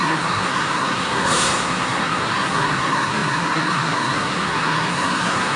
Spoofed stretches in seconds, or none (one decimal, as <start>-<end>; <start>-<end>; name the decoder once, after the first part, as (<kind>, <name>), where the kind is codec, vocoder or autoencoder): 0.0-5.6 (codec, SNAC)